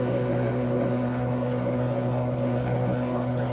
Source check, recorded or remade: remade